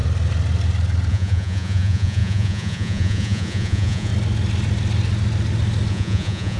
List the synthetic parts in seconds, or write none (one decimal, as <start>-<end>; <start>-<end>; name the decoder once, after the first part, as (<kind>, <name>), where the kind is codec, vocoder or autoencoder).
1.1-4.1 (vocoder, Vocos); 5.9-6.6